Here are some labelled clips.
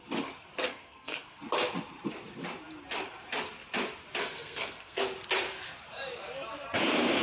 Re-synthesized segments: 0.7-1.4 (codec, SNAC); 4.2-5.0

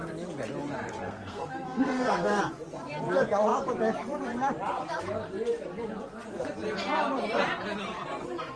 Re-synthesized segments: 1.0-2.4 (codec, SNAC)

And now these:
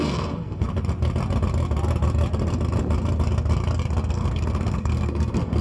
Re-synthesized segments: 0.0-0.7 (codec, SNAC); 4.1-5.6

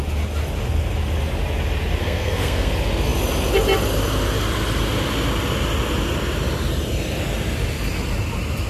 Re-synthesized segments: 2.0-2.7 (codec, SNAC)